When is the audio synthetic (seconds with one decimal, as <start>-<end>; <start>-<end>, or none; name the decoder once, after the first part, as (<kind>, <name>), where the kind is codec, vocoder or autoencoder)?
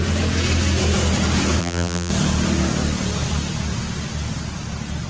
1.6-2.1 (vocoder, BigVGAN v2)